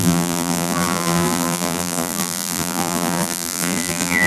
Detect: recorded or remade remade